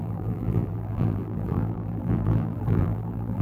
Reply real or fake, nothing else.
fake